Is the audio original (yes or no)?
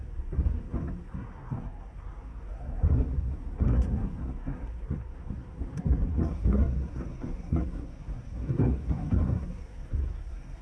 no